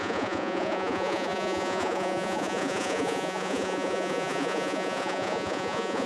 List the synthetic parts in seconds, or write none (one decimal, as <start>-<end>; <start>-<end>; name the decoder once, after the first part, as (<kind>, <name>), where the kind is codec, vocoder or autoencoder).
0.0-6.1 (vocoder, Vocos)